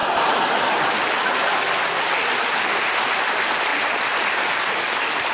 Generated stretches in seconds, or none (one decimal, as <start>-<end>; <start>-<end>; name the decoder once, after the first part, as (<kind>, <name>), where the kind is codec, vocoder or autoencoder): none